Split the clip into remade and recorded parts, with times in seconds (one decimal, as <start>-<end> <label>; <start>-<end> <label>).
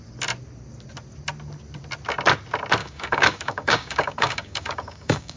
0.0-2.8 recorded; 2.8-5.4 remade